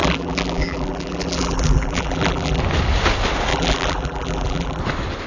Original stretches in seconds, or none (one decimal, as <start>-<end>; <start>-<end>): 2.6-3.5; 4.8-5.3